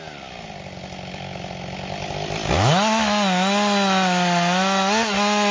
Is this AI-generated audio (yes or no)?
no